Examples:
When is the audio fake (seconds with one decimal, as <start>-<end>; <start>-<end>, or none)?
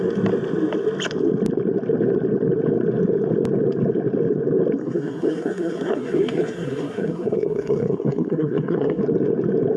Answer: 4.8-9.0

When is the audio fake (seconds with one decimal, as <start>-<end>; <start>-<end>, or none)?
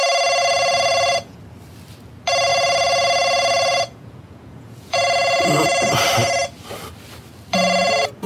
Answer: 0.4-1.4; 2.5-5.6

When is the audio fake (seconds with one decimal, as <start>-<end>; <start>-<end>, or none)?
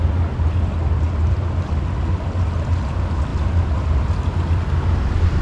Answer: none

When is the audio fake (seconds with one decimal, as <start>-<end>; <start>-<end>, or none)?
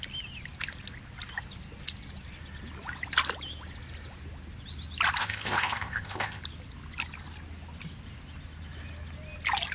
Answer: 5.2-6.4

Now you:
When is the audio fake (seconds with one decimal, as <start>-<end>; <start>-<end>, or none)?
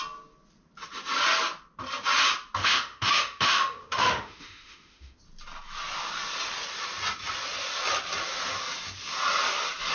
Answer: 2.6-5.2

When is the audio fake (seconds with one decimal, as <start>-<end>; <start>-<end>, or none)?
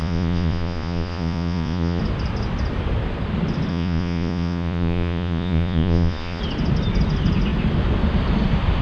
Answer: 0.0-2.0; 3.7-6.4